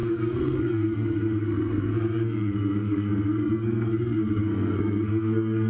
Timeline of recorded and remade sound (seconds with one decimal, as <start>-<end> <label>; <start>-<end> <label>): 0.0-5.7 remade